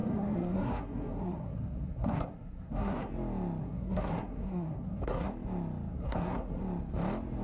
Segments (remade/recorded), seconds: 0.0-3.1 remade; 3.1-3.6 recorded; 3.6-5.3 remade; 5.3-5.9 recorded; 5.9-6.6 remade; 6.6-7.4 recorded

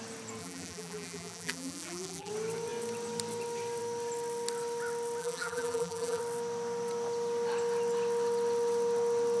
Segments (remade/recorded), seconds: 0.0-0.4 recorded; 0.4-2.3 remade; 2.3-5.2 recorded; 5.2-6.2 remade; 6.2-9.4 recorded

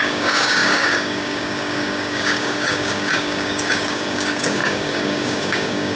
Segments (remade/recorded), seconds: 0.0-6.0 remade

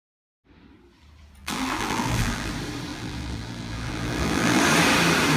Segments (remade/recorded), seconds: 0.0-1.4 recorded; 1.4-2.5 remade; 2.5-2.9 recorded; 2.9-4.6 remade; 4.6-5.4 recorded

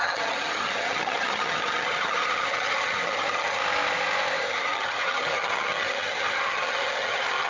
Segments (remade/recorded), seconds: 0.0-3.6 remade; 3.6-4.4 recorded; 4.4-7.5 remade

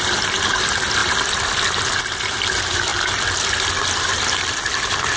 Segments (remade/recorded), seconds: 0.0-5.2 recorded